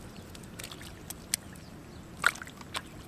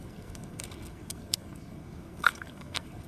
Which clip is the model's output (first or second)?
second